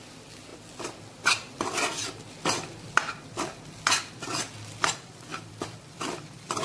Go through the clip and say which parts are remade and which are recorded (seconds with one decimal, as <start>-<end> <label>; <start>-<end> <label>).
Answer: 0.0-5.3 recorded; 5.3-6.6 remade

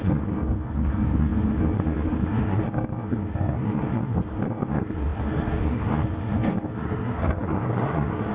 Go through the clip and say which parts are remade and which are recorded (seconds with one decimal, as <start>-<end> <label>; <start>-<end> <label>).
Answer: 0.0-8.3 remade

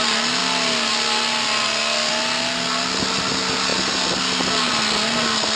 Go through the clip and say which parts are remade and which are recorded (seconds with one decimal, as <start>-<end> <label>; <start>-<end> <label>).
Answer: 0.0-5.6 recorded

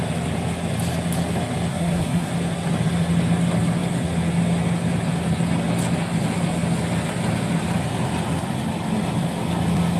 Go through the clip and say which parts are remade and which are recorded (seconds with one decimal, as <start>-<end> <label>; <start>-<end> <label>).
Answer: 0.0-1.7 recorded; 1.7-2.3 remade; 2.3-10.0 recorded

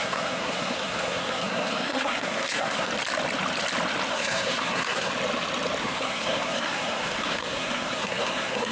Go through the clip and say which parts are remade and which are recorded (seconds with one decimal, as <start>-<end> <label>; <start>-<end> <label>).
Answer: 0.0-2.9 remade; 2.9-4.1 recorded; 4.1-5.1 remade; 5.1-5.8 recorded; 5.8-8.7 remade